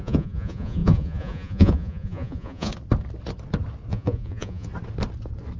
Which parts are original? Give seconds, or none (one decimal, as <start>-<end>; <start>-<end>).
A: 2.7-3.9; 4.7-5.6

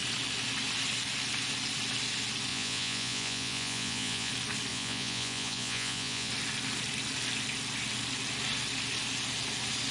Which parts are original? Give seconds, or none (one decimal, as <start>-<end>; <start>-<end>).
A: 0.0-2.5; 4.3-4.7; 6.3-9.9

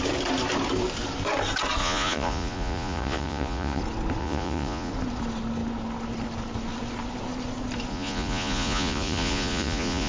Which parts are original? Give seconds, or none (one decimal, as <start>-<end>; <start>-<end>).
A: 0.0-1.8; 3.8-4.2; 4.9-7.9

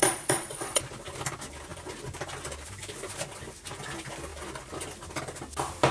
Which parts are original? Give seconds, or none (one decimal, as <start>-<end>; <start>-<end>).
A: 0.8-5.9

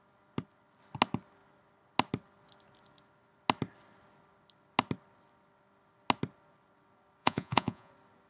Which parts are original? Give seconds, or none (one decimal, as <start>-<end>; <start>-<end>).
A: 0.0-7.2; 7.9-8.3

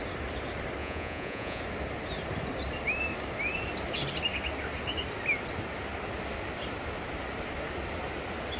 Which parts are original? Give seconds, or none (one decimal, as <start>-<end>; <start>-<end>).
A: 0.0-0.8; 1.6-8.6